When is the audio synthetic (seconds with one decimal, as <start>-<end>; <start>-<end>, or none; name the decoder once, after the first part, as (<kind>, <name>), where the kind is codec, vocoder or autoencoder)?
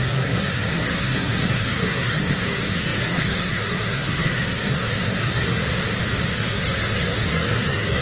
0.0-5.6 (codec, SNAC); 6.3-8.0